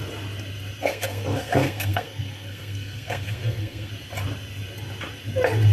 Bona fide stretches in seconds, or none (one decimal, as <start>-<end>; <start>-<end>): 0.0-0.9; 3.9-5.7